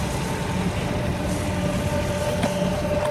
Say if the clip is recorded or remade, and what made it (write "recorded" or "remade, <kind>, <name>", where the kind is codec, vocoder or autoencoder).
recorded